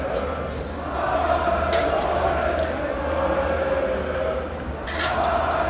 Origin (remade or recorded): recorded